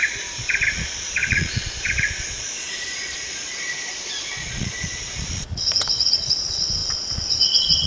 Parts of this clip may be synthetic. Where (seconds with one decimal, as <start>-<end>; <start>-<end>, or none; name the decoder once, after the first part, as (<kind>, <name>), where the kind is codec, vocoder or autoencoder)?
0.0-7.9 (vocoder, Vocos)